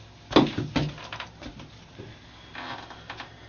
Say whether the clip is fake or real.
real